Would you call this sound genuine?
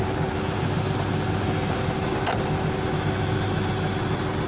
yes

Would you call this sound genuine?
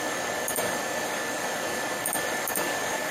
no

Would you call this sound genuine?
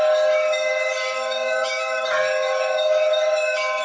no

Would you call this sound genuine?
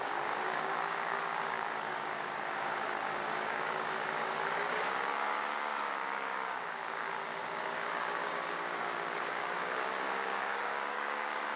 no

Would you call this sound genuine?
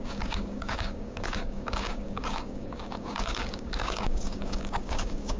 no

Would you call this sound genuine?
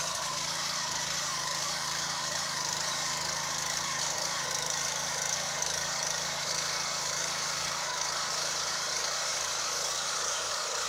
no